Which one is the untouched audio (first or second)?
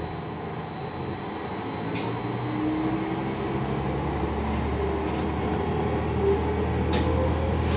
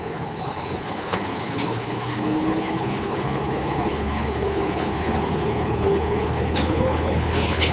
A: first